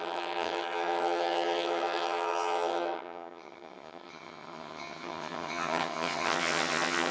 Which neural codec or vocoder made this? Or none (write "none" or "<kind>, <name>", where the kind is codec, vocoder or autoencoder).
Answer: vocoder, HiFi-GAN